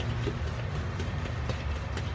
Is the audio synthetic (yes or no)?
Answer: no